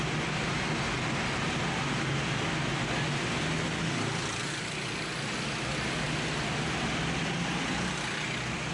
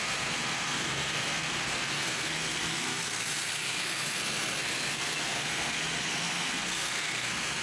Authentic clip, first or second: first